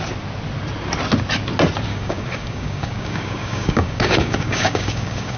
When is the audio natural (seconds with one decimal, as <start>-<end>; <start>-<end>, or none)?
0.0-1.9